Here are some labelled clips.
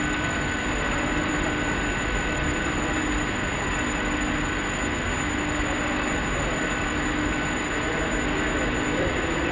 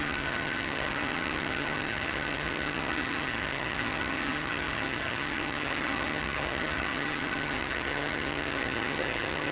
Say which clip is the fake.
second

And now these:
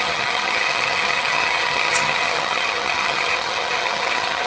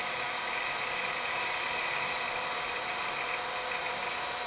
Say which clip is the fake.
first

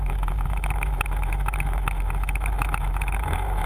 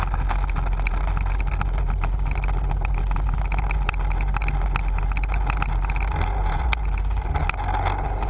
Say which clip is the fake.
first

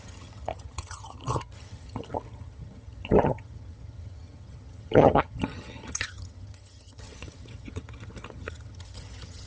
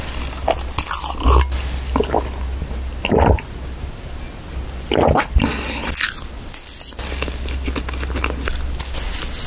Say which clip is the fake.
first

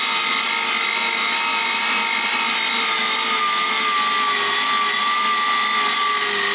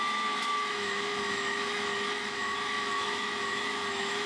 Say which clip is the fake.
second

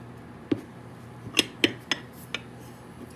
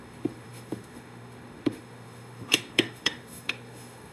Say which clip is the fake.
second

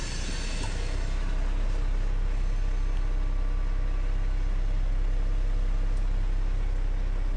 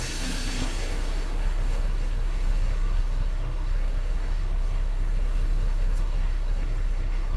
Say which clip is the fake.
second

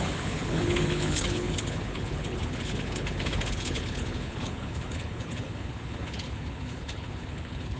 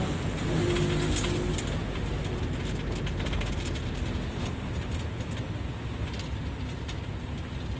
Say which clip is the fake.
first